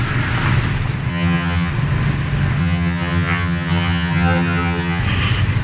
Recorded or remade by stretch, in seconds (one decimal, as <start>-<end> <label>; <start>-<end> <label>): 0.0-1.1 recorded; 1.1-1.7 remade; 1.7-2.6 recorded; 2.6-5.0 remade; 5.0-5.6 recorded

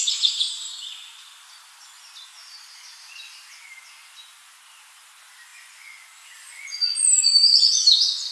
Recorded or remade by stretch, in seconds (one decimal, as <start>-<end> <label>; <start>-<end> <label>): 0.0-5.5 recorded; 5.5-7.3 remade; 7.3-8.3 recorded

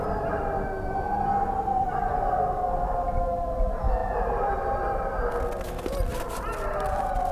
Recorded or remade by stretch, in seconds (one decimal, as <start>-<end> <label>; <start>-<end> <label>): 0.0-4.0 recorded; 4.0-5.3 remade; 5.3-7.3 recorded

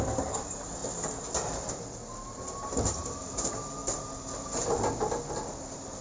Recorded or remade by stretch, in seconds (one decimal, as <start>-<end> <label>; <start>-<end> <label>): 0.0-6.0 recorded

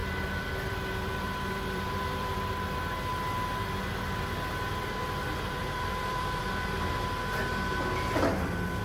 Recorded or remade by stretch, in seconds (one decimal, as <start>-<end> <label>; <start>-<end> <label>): 0.0-2.5 remade; 2.5-5.6 recorded; 5.6-6.4 remade; 6.4-8.8 recorded

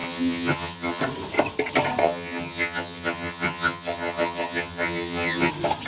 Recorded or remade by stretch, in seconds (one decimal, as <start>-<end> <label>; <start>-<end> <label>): 0.0-1.0 remade; 1.0-2.0 recorded; 2.0-5.5 remade; 5.5-5.9 recorded

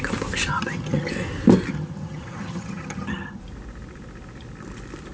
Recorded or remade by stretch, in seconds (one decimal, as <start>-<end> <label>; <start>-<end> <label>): 0.0-0.5 recorded; 0.5-1.1 remade; 1.1-1.7 recorded; 1.7-3.4 remade; 3.4-5.1 recorded

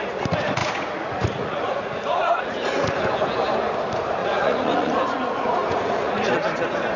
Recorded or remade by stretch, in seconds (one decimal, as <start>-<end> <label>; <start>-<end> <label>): 0.0-0.6 recorded; 0.6-2.9 remade; 2.9-4.2 recorded; 4.2-6.3 remade; 6.3-7.0 recorded